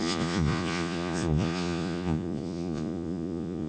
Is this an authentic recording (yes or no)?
no